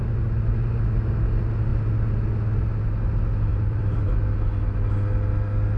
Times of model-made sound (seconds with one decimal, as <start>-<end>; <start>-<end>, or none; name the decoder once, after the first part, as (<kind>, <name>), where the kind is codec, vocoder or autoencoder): 3.5-4.1 (vocoder, BigVGAN v2)